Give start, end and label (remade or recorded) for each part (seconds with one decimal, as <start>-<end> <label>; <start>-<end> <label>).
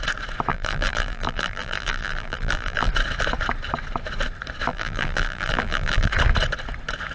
0.0-0.5 recorded; 0.5-2.9 remade; 2.9-4.7 recorded; 4.7-6.1 remade; 6.1-7.1 recorded